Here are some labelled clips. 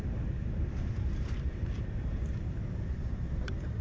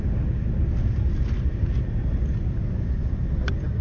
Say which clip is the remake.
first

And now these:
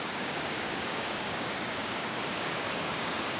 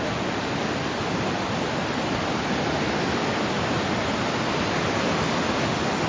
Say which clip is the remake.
first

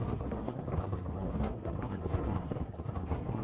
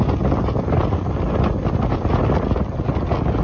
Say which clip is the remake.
first